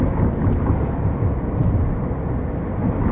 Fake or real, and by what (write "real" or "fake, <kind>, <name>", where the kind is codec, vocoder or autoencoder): real